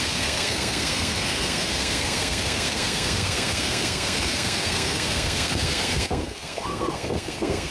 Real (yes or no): no